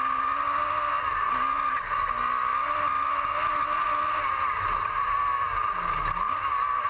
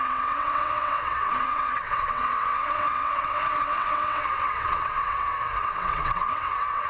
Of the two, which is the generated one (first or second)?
second